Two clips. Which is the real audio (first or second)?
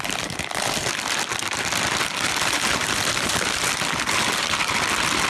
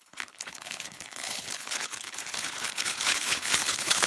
first